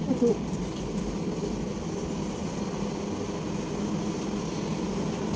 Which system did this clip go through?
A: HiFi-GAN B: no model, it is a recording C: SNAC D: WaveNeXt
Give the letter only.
B